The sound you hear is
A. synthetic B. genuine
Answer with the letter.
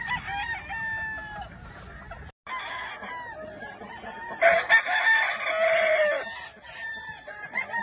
B